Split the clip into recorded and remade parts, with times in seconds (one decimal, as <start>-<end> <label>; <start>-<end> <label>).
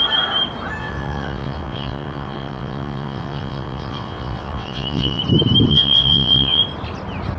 0.0-0.8 recorded; 0.8-5.2 remade; 5.2-5.7 recorded; 5.7-6.6 remade; 6.6-7.4 recorded